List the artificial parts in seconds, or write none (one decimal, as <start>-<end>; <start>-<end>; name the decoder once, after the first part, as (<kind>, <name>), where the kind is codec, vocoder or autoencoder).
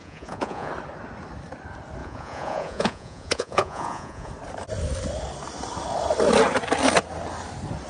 0.0-0.7 (vocoder, Vocos); 2.0-4.3